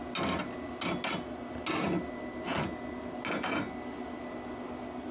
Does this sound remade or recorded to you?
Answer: recorded